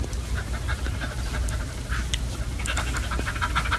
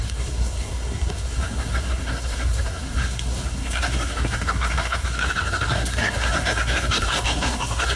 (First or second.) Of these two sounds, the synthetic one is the second